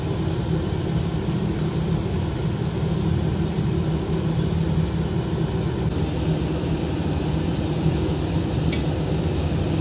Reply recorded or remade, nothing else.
recorded